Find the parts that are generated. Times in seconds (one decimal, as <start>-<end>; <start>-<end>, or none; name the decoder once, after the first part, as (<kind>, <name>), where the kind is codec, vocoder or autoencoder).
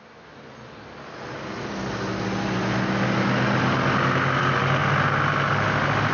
none